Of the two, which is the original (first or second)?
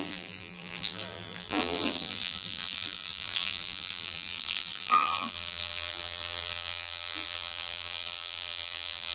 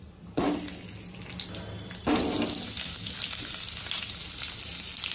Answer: second